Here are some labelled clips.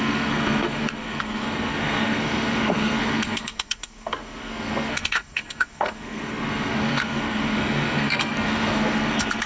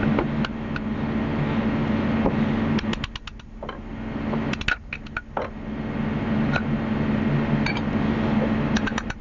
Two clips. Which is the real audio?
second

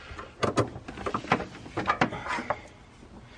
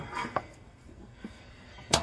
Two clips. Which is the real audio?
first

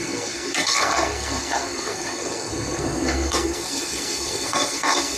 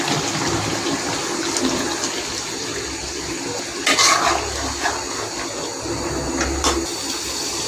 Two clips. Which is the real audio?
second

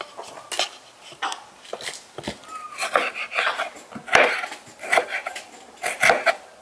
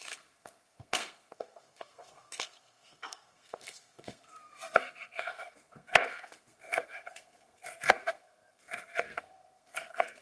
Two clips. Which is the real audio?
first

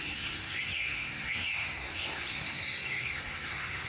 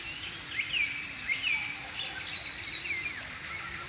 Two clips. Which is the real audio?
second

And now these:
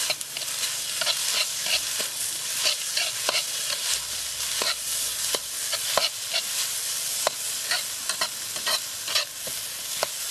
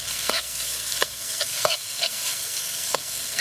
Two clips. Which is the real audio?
first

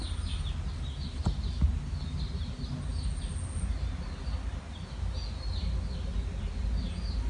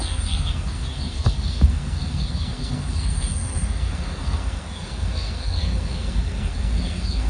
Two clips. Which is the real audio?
first